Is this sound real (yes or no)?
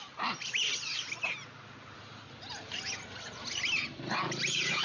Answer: yes